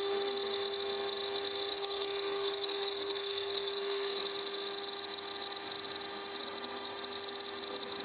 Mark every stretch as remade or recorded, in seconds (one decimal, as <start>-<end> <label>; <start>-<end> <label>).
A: 0.0-1.7 recorded; 1.7-4.2 remade; 4.2-8.0 recorded